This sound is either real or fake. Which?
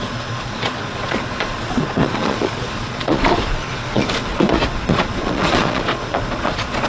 fake